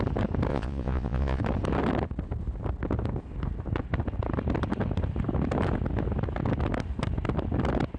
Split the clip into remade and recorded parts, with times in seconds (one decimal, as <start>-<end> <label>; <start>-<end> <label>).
0.0-0.5 recorded; 0.5-1.4 remade; 1.4-8.0 recorded